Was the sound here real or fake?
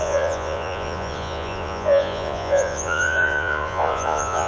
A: fake